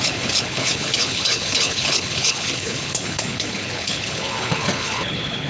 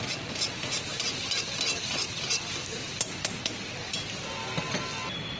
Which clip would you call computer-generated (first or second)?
first